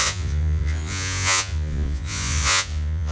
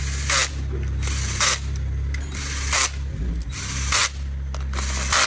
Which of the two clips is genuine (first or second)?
second